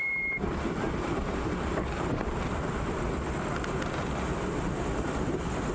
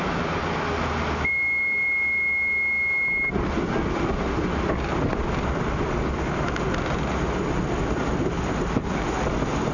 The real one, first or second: second